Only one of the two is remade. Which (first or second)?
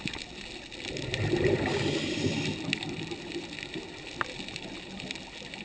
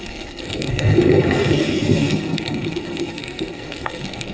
second